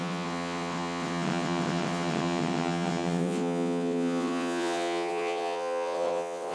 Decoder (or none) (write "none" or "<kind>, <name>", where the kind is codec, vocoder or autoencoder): vocoder, WaveNeXt